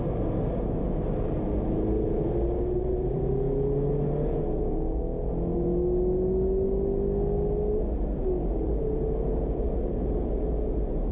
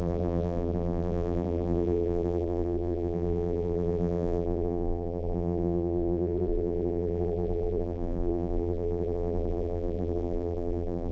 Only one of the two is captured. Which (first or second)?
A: first